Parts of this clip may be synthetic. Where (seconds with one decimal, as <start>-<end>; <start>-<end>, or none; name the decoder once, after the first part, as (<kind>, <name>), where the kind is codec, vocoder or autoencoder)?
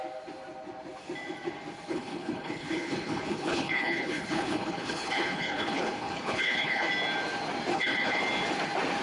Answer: 1.9-6.9 (codec, HILCodec); 7.7-8.2